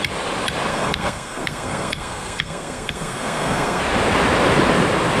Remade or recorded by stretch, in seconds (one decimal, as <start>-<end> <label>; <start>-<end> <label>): 0.0-0.7 recorded; 0.7-3.8 remade; 3.8-5.2 recorded